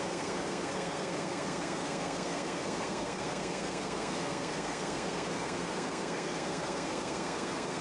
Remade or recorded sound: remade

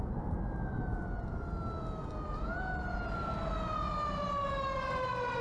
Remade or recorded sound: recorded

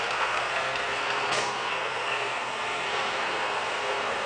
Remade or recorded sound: remade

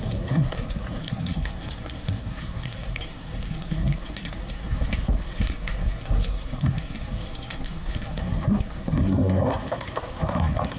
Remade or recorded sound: remade